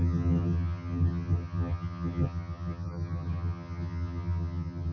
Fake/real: fake